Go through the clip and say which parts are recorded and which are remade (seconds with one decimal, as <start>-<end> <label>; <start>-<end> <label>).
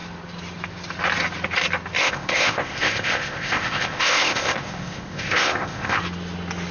0.0-2.0 recorded; 2.0-6.0 remade; 6.0-6.7 recorded